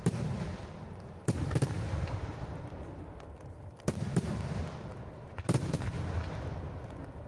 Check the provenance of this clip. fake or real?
real